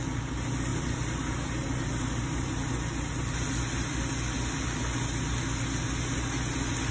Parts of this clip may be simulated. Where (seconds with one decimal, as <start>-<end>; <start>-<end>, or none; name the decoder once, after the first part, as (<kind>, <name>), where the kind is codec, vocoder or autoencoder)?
0.7-2.7 (vocoder, BigVGAN v2)